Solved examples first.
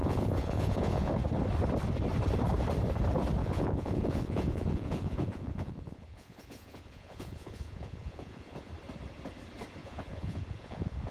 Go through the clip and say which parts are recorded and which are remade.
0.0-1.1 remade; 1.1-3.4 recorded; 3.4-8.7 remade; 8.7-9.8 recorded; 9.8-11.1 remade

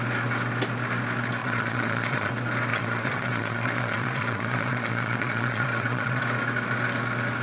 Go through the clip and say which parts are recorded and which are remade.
0.0-1.4 recorded; 1.4-2.3 remade; 2.3-2.7 recorded; 2.7-6.2 remade; 6.2-7.4 recorded

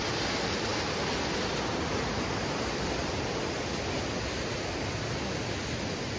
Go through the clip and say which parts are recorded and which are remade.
0.0-6.2 recorded

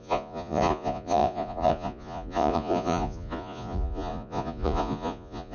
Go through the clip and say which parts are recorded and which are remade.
0.0-5.5 remade

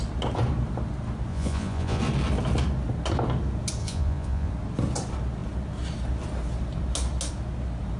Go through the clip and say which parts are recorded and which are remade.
0.0-1.3 recorded; 1.3-2.0 remade; 2.0-3.8 recorded; 3.8-4.5 remade; 4.5-8.0 recorded